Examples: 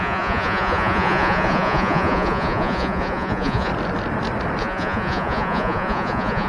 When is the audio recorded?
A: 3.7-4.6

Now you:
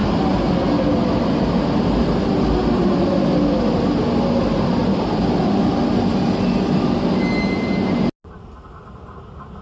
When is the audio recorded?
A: 0.0-4.8; 6.1-9.6

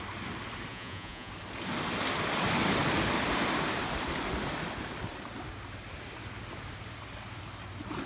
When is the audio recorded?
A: 0.0-0.7; 1.3-8.1

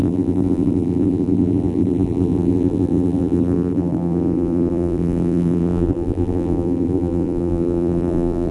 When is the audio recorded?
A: none

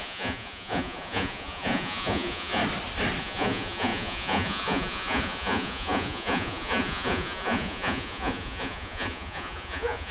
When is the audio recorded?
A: 2.6-3.2

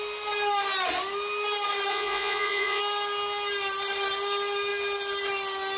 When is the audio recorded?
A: 0.0-1.9; 2.8-5.8

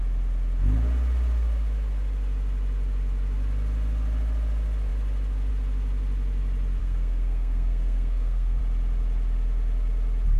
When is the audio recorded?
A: 0.0-6.8; 8.6-10.4

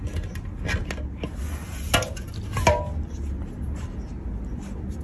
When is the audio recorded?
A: 0.0-5.0